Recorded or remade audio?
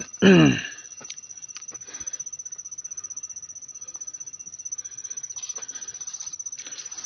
recorded